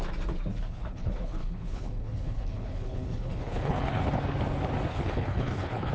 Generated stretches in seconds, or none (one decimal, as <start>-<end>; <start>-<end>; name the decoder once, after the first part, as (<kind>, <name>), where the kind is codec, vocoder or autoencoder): 0.5-4.0 (codec, HILCodec); 4.9-5.9